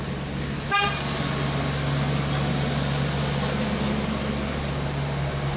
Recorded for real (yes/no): yes